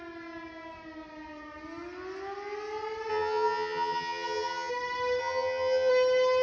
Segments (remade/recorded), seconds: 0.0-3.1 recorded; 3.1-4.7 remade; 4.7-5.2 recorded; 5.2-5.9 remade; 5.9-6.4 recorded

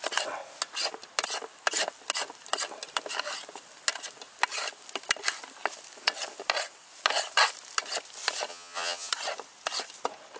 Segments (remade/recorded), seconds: 0.0-8.5 recorded; 8.5-9.1 remade; 9.1-10.4 recorded

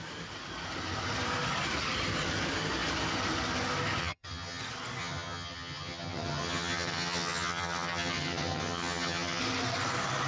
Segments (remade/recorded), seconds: 0.0-4.0 recorded; 4.0-4.6 remade; 4.6-5.0 recorded; 5.0-9.4 remade; 9.4-10.3 recorded